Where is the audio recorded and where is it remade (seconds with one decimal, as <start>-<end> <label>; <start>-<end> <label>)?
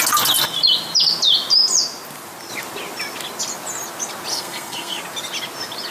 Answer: 0.0-4.3 recorded; 4.3-5.0 remade; 5.0-5.9 recorded